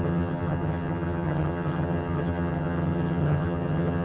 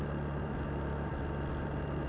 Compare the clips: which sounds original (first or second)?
second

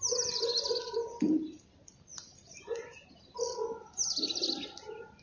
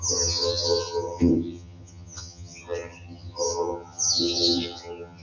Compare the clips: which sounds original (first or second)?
first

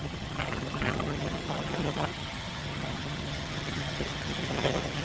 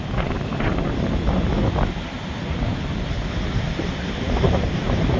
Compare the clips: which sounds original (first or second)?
second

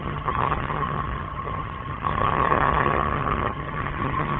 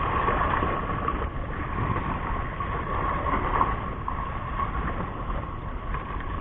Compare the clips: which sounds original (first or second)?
second